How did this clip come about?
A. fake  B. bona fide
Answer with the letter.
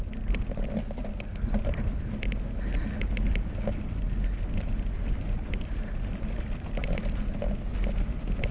B